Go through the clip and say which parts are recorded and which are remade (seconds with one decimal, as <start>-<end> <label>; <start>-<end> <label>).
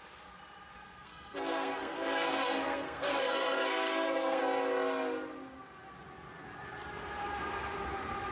0.0-0.7 recorded; 0.7-4.4 remade; 4.4-8.3 recorded